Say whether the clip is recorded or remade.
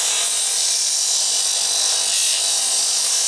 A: recorded